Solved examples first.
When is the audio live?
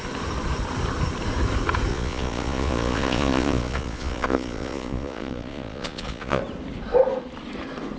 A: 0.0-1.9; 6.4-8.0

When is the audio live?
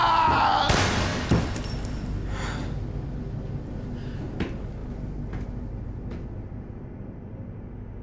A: 0.0-8.0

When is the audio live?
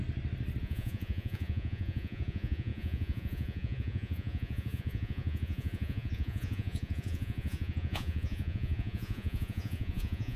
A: 0.0-0.6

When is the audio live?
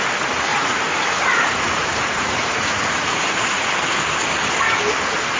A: 0.0-0.5; 3.7-5.4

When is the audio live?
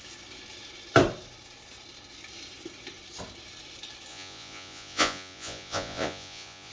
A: 0.0-4.1